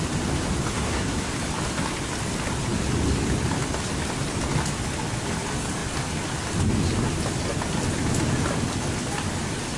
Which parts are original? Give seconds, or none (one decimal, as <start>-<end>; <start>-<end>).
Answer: 0.0-0.7; 1.3-9.8